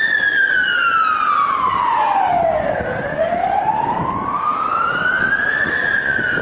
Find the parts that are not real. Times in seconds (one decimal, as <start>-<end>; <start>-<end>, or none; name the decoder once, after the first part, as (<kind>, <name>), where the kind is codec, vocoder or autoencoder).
0.0-0.8 (vocoder, Vocos); 1.6-2.3; 3.0-3.8; 5.3-6.4